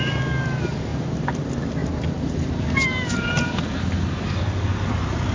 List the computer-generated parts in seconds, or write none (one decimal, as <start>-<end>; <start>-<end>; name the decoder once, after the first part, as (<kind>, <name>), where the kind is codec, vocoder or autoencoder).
0.9-1.4 (vocoder, BigVGAN v2); 1.8-3.8